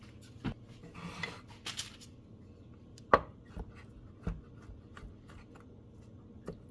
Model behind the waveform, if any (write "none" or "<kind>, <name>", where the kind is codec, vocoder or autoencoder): none